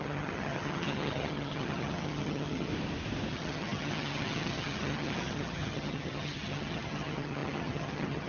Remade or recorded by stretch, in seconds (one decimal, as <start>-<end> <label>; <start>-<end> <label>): 0.0-2.7 remade; 2.7-3.3 recorded; 3.3-8.3 remade